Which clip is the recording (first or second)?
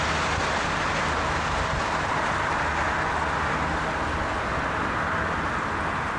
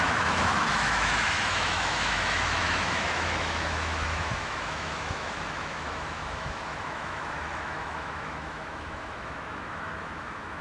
first